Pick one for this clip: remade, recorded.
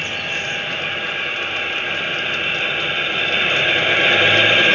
recorded